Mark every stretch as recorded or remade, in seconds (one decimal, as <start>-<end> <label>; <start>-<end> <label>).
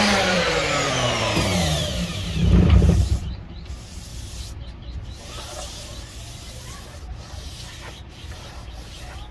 0.0-4.1 remade; 4.1-7.0 recorded; 7.0-9.3 remade